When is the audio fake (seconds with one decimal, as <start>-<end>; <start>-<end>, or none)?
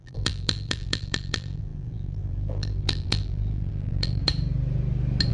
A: 0.0-4.2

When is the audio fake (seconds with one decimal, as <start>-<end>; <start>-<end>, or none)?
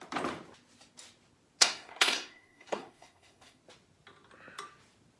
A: 1.6-3.6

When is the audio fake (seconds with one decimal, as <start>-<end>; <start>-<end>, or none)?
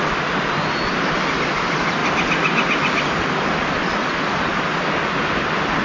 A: none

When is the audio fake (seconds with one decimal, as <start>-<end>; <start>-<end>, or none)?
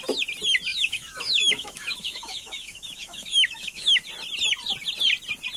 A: 0.7-4.1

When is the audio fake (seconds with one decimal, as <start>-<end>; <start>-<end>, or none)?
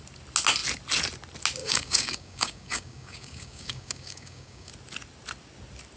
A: 1.6-4.7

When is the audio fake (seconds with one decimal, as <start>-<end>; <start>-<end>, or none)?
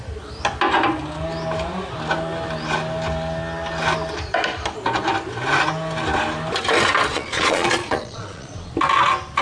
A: 7.1-8.7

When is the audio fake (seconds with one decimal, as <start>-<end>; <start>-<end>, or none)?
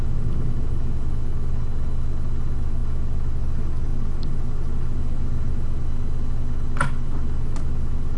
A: none